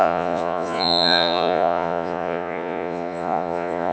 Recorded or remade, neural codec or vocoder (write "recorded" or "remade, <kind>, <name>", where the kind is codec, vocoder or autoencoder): remade, vocoder, Vocos